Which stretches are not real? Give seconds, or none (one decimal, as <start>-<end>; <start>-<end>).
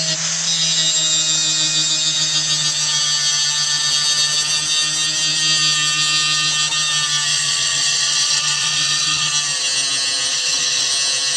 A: 7.3-9.3; 10.3-10.9